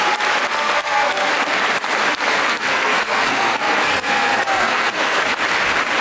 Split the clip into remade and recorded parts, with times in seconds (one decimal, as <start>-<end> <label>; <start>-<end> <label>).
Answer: 0.0-0.5 recorded; 0.5-1.3 remade; 1.3-2.5 recorded; 2.5-5.3 remade; 5.3-6.0 recorded